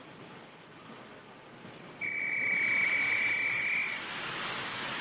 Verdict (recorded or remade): recorded